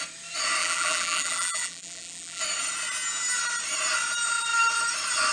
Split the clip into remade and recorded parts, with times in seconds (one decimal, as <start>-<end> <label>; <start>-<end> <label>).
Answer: 0.0-0.6 recorded; 0.6-2.4 remade; 2.4-5.3 recorded